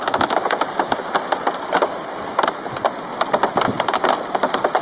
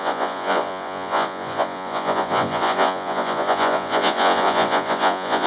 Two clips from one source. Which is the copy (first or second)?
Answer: second